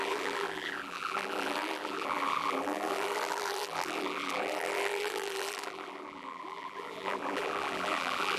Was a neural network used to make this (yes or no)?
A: yes